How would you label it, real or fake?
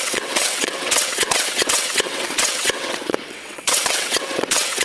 fake